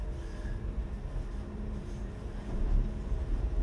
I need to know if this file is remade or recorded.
remade